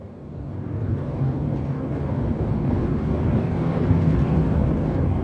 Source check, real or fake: fake